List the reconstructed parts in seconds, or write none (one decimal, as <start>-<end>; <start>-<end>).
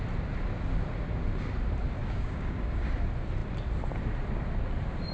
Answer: 2.0-2.9